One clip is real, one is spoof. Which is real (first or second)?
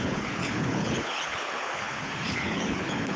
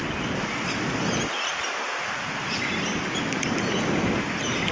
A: second